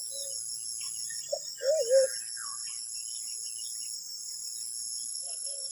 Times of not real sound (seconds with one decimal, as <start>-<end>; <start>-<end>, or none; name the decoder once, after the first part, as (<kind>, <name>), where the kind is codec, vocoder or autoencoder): 5.1-5.7 (codec, SNAC)